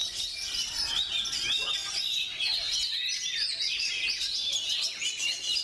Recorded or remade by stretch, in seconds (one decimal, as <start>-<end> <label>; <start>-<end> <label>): 0.0-5.6 recorded